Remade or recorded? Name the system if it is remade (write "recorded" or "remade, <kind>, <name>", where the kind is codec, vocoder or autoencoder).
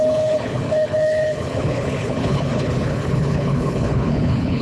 remade, codec, HILCodec